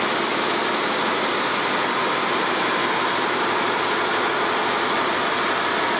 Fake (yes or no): no